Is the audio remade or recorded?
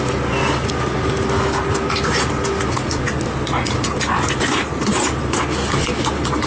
recorded